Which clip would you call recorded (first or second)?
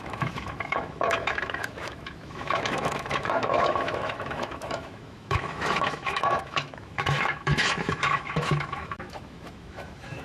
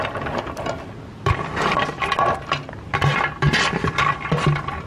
second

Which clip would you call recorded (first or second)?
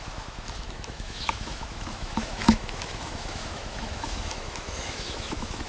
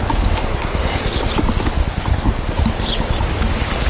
second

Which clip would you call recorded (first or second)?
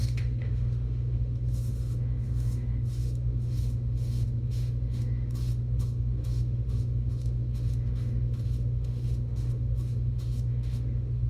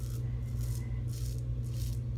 second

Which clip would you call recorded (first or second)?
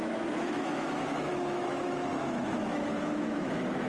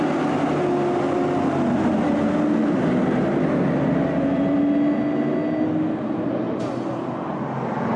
second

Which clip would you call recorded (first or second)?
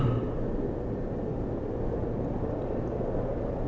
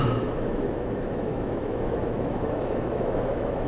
first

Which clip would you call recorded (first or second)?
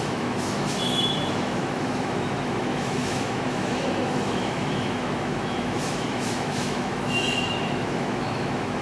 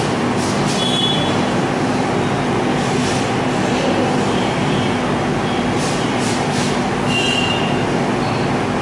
second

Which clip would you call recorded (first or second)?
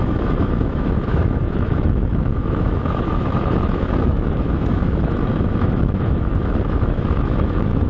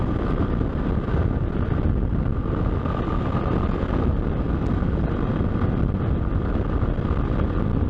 second